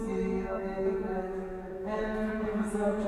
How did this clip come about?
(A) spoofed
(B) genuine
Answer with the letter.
A